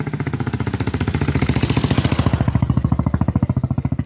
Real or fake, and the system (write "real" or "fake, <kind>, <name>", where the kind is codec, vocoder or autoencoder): real